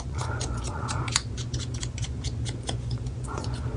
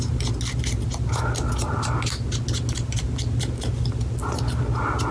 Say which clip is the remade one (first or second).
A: first